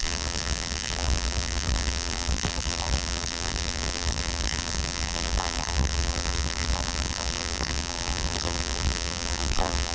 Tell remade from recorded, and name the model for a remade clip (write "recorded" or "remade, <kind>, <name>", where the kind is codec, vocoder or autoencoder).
remade, vocoder, BigVGAN v2